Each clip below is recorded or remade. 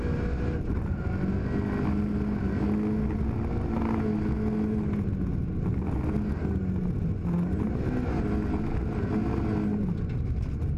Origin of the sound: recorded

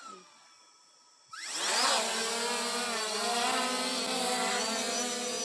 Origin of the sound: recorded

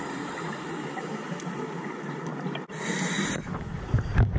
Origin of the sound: recorded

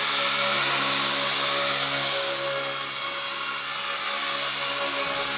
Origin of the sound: recorded